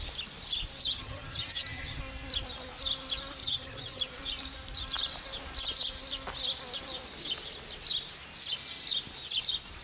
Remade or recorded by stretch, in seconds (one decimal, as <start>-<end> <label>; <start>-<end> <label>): 0.0-0.8 recorded; 0.8-2.0 remade; 2.0-3.4 recorded; 3.4-4.0 remade; 4.0-9.8 recorded